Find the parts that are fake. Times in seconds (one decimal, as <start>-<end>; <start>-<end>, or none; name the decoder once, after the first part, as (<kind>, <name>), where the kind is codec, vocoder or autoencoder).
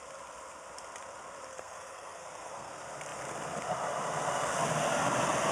1.5-2.7 (codec, SNAC)